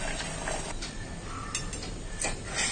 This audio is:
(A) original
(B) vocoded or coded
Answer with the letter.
A